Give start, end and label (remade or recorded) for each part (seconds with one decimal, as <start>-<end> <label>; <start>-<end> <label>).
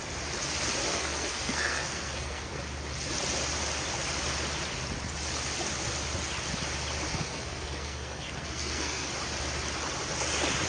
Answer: 0.0-0.9 recorded; 0.9-2.6 remade; 2.6-7.1 recorded; 7.1-9.1 remade; 9.1-10.7 recorded